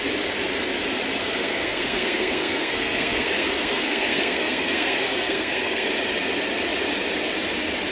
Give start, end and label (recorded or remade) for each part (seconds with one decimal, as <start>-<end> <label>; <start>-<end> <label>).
0.0-1.2 recorded; 1.2-5.9 remade; 5.9-7.9 recorded